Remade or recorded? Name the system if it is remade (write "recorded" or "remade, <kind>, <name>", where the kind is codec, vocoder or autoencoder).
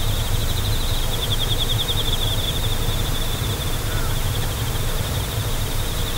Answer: remade, vocoder, BigVGAN v2